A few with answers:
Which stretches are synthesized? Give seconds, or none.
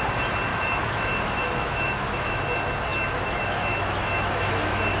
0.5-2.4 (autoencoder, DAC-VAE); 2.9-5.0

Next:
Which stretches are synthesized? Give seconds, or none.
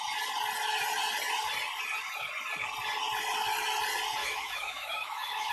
4.2-5.5 (autoencoder, DAC-VAE)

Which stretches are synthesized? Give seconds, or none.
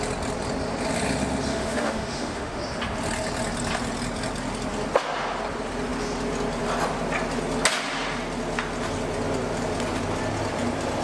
1.5-2.6 (autoencoder, DAC-VAE)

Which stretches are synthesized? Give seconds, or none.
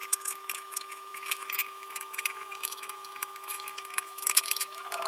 0.0-5.1 (autoencoder, DAC-VAE)